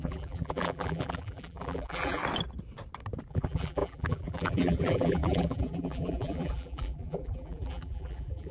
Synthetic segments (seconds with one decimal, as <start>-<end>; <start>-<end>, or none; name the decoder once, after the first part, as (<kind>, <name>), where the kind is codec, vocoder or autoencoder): 0.0-2.2 (vocoder, BigVGAN v2); 3.3-8.5